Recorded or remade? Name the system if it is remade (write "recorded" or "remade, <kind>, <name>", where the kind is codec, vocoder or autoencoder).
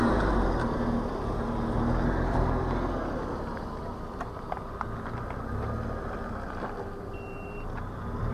recorded